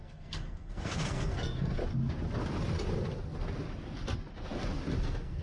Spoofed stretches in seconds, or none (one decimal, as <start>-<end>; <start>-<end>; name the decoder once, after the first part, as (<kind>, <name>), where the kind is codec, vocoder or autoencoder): 0.0-1.8 (codec, SNAC); 5.0-5.4